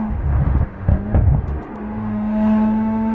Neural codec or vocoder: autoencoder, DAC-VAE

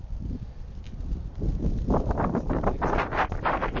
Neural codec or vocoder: vocoder, BigVGAN v2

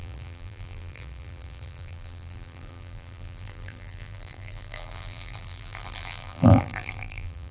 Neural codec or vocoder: vocoder, BigVGAN v2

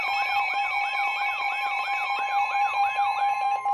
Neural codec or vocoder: vocoder, BigVGAN v2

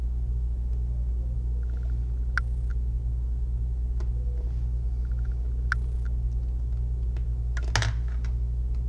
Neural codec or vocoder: none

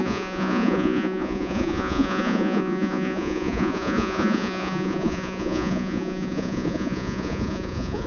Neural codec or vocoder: vocoder, Vocos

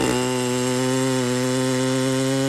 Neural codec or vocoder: none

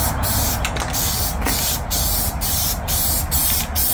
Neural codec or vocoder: none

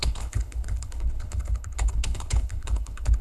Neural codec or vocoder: codec, HILCodec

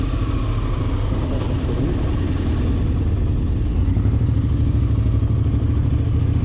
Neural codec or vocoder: none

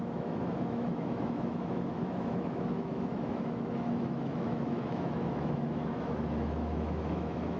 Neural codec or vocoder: autoencoder, DAC-VAE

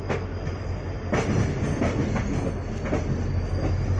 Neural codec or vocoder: none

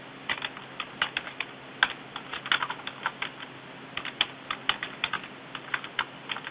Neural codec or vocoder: none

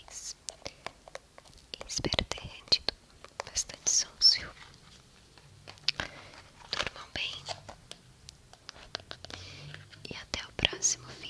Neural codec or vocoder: none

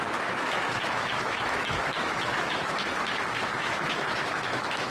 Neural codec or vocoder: autoencoder, DAC-VAE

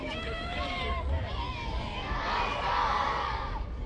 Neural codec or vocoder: codec, DAC